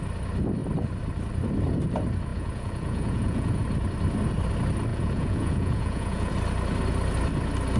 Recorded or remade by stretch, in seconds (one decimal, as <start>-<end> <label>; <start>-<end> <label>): 0.0-2.3 recorded; 2.3-3.6 remade; 3.6-4.9 recorded; 4.9-6.3 remade; 6.3-7.8 recorded